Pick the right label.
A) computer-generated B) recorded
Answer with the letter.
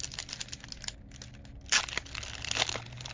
B